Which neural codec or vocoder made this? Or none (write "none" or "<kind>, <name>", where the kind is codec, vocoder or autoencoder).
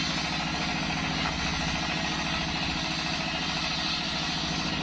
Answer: none